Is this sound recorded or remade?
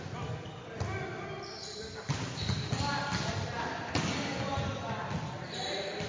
recorded